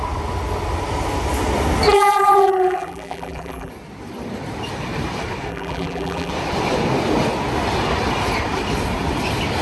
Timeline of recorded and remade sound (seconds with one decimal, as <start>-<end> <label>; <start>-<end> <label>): 0.0-1.9 recorded; 1.9-3.7 remade; 3.7-5.5 recorded; 5.5-6.3 remade; 6.3-9.6 recorded